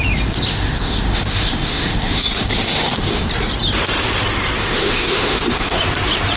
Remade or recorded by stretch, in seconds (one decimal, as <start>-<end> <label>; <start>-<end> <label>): 0.0-0.5 recorded; 0.5-3.2 remade; 3.2-4.6 recorded; 4.6-5.8 remade; 5.8-6.4 recorded